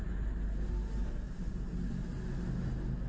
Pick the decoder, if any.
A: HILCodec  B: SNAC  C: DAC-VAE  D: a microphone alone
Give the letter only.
D